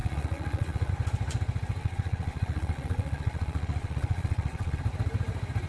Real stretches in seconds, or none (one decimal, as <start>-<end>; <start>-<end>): 0.9-1.8; 4.8-5.7